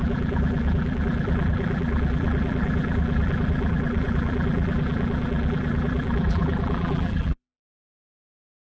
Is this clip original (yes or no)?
no